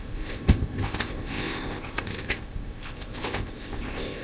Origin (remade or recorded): remade